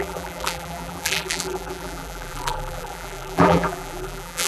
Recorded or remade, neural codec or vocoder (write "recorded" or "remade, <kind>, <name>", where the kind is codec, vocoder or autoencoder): remade, vocoder, BigVGAN v2